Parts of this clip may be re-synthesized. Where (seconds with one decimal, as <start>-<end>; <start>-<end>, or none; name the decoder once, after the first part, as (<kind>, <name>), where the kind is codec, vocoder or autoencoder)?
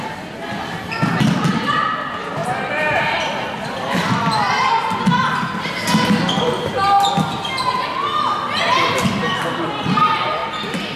none